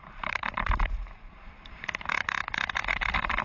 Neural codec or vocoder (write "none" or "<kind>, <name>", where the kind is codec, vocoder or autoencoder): vocoder, BigVGAN v2